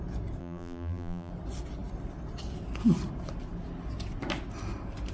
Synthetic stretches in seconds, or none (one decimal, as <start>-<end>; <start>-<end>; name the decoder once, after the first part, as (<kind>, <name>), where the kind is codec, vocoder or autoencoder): 0.4-1.3 (vocoder, BigVGAN v2)